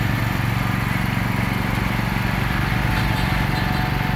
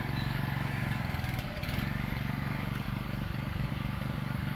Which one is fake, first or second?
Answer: second